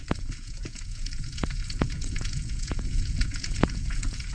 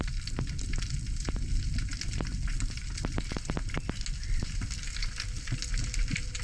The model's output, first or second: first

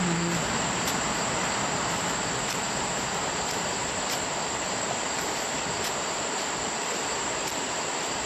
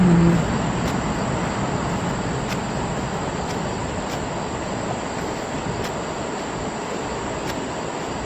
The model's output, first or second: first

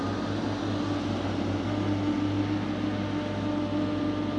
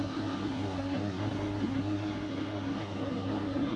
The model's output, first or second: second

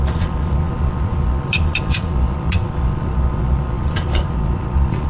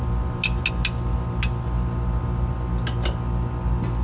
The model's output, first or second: first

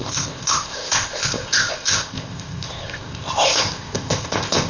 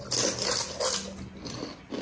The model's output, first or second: first